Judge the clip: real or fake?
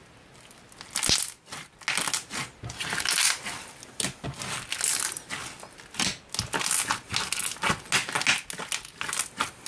real